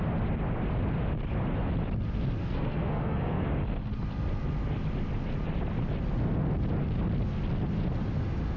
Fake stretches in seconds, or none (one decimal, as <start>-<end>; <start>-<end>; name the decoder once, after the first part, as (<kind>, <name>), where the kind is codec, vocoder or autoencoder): 2.4-3.5 (codec, SNAC)